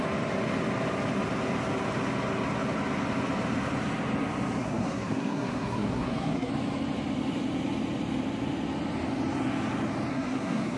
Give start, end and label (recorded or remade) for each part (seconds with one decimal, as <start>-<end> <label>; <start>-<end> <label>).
0.0-4.6 recorded; 4.6-6.5 remade; 6.5-10.1 recorded; 10.1-10.8 remade